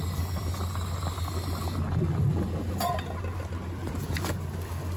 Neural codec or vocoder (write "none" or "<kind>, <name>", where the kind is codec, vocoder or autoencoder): none